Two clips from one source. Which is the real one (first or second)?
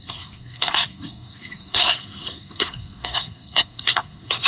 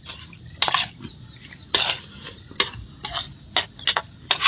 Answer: second